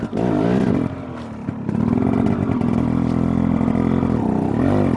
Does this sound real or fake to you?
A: real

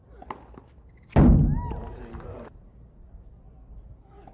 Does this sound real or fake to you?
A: real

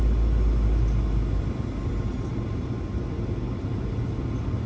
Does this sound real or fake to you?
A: real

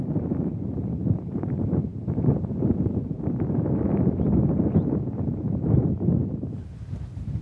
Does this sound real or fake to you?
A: fake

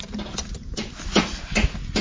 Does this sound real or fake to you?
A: real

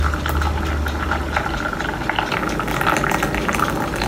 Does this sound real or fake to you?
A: real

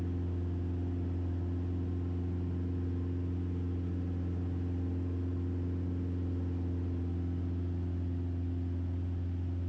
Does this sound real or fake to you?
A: real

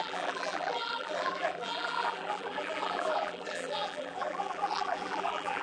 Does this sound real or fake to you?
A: fake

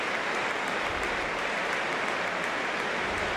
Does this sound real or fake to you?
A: real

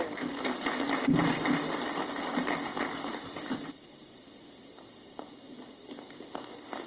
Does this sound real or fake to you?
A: fake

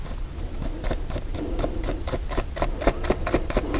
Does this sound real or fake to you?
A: real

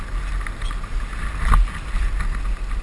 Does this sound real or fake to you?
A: real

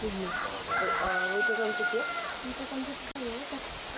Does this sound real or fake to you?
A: real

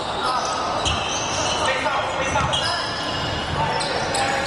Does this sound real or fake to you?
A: real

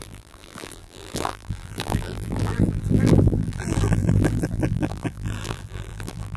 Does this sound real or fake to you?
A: fake